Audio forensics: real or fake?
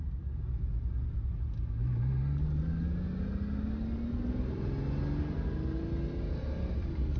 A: real